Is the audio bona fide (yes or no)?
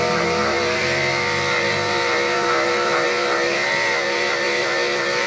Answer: no